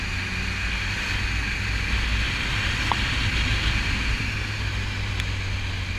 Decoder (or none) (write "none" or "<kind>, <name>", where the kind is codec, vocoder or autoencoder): none